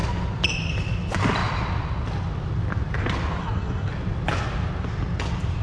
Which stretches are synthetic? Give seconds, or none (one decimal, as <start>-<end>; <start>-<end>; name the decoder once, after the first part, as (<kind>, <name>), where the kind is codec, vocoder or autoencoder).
3.4-3.9 (codec, SNAC)